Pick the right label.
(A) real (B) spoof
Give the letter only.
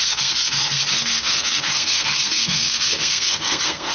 B